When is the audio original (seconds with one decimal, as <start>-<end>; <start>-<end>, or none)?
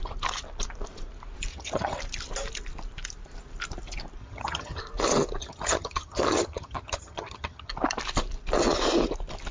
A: 0.0-1.5; 2.0-4.2; 4.8-5.4; 7.7-9.5